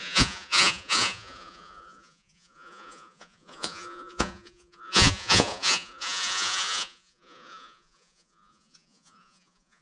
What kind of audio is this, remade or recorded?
remade